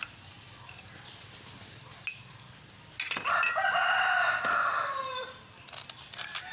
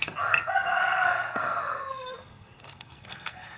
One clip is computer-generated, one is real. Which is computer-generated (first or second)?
second